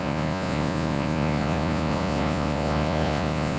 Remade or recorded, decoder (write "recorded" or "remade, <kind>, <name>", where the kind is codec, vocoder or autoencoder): remade, vocoder, Vocos